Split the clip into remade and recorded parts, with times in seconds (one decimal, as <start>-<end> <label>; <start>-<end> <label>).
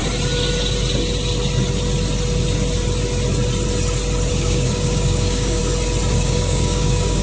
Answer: 0.0-4.3 recorded; 4.3-5.6 remade; 5.6-6.1 recorded; 6.1-7.2 remade